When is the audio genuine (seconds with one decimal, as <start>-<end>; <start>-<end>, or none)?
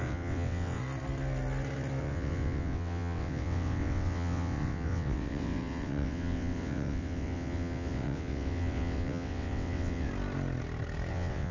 0.8-2.0; 10.1-11.1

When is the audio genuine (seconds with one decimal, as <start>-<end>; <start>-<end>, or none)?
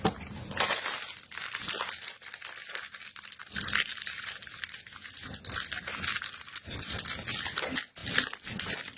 0.0-9.0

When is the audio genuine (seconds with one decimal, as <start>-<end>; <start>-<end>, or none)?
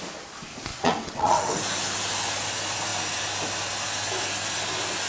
0.0-0.7; 1.6-5.1